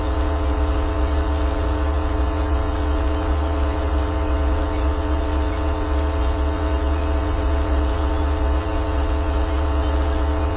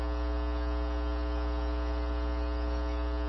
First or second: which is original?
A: second